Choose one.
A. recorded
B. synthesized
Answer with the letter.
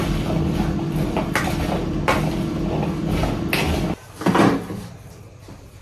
A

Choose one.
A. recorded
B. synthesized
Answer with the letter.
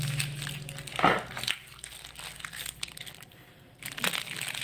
A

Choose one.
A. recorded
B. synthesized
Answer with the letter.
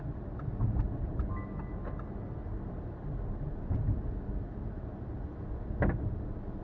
A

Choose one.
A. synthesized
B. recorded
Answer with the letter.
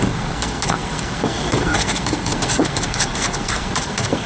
A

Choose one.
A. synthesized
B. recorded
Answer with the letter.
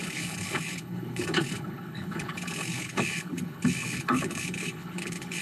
A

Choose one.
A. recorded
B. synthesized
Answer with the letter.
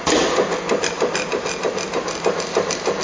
A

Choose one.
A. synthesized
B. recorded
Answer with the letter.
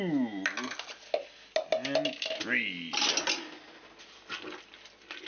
B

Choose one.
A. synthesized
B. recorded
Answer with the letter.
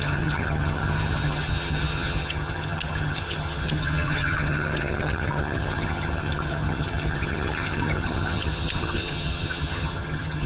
A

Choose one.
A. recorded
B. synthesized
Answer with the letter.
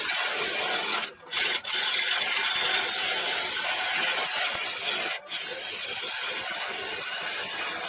A